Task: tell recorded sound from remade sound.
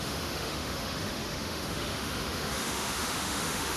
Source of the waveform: remade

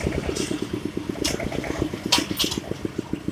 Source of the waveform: recorded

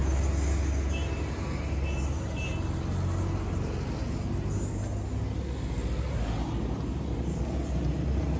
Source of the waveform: recorded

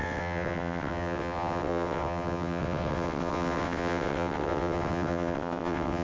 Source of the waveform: remade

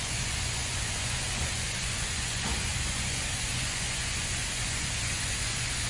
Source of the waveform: remade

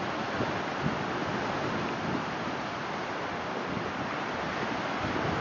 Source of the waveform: recorded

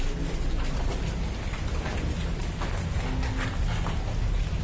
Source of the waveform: recorded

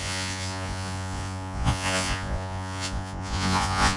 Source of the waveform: remade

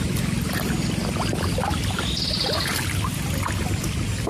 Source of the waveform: recorded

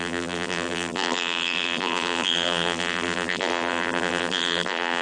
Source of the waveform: remade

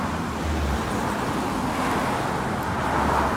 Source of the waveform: recorded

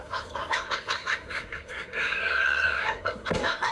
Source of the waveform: remade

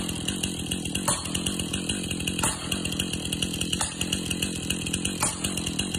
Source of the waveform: recorded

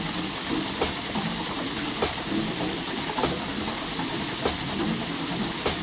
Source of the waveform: recorded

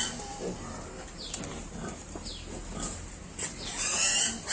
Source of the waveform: recorded